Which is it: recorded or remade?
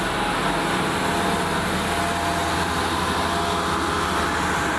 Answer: recorded